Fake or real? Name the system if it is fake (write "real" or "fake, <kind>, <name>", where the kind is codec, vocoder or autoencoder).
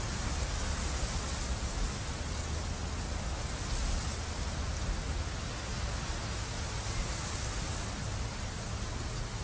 real